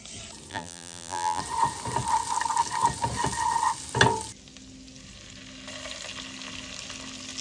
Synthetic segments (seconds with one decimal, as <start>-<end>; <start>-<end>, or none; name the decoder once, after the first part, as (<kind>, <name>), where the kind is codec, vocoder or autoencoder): 0.5-1.4 (vocoder, BigVGAN v2)